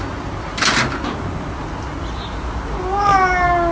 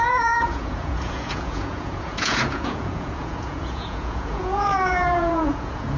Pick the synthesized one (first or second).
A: second